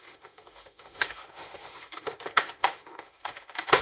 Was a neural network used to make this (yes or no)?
yes